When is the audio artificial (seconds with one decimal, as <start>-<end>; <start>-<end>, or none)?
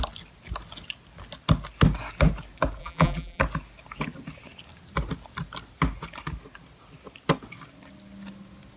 2.8-3.4